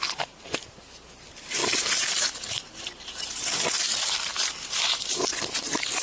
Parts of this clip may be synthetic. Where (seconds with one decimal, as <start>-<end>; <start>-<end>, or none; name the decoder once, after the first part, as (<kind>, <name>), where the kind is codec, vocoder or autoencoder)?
none